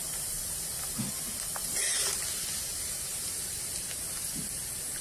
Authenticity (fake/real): real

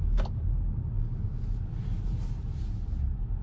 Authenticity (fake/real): real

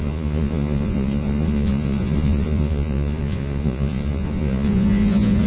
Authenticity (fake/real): fake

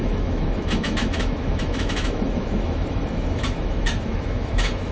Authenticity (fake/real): fake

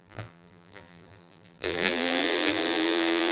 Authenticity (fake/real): fake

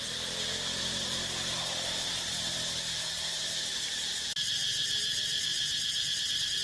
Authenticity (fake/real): fake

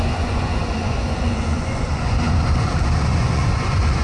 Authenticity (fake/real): fake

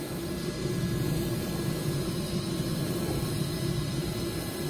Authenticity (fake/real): real